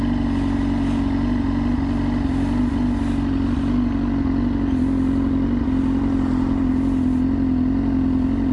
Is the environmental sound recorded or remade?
recorded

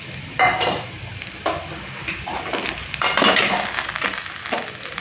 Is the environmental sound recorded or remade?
recorded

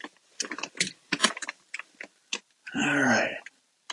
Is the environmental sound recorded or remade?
recorded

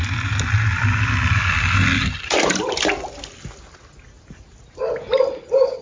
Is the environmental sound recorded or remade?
recorded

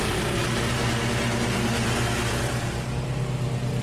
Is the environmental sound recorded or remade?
recorded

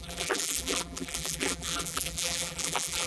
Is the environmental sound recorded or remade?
remade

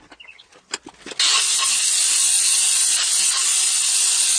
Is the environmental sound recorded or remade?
recorded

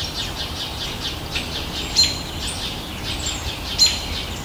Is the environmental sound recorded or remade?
remade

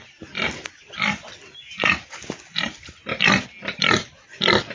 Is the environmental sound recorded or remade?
recorded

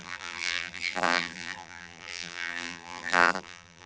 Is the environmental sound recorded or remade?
remade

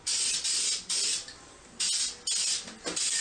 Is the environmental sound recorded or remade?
recorded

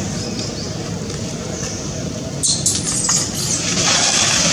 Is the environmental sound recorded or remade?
recorded